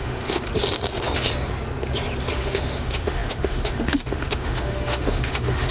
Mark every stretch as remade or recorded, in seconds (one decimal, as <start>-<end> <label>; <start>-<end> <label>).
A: 0.0-0.5 remade; 0.5-2.3 recorded; 2.3-5.7 remade